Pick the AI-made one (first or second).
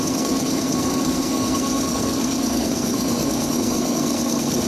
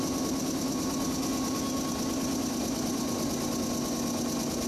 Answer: first